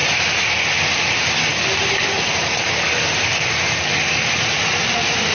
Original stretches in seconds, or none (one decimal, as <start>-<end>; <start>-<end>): 0.0-5.3